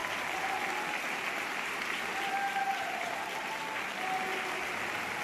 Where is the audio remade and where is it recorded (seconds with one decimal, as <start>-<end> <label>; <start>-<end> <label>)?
0.0-5.2 recorded